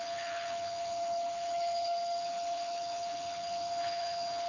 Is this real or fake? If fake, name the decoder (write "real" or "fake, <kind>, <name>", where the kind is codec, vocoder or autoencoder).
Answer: fake, codec, HILCodec